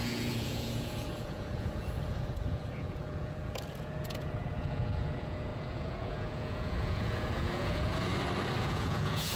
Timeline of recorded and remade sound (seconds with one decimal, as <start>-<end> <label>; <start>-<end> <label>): 0.0-8.1 remade; 8.1-8.6 recorded; 8.6-9.4 remade